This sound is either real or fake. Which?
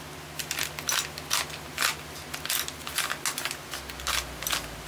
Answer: real